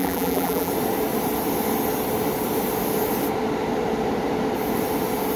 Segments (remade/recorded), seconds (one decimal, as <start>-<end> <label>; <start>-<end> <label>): 0.0-0.7 remade; 0.7-5.4 recorded